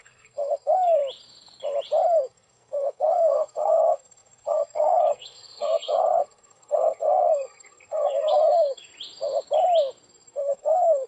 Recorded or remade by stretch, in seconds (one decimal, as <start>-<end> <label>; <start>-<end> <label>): 0.0-1.0 remade; 1.0-2.2 recorded; 2.2-8.9 remade; 8.9-10.1 recorded; 10.1-11.1 remade